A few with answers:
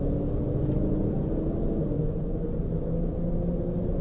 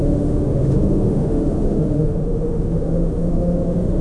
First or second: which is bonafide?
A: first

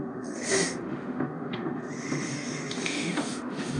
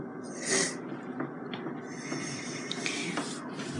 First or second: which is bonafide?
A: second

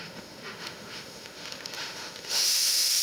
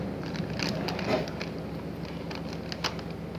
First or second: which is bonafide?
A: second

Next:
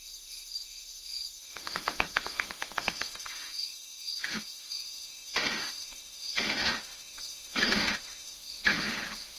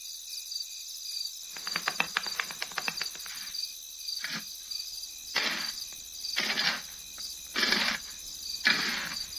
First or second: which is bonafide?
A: second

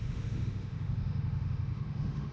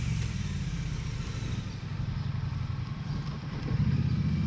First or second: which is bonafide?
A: second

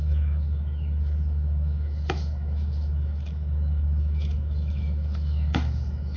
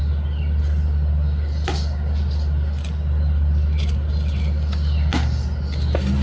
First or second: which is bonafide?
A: second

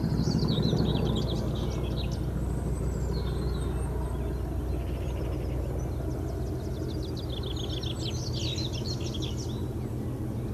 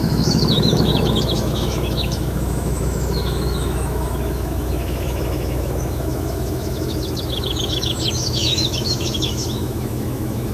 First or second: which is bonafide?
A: first